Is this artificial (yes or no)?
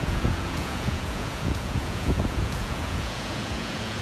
yes